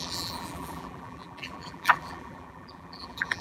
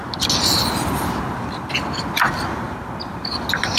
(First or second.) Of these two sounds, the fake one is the first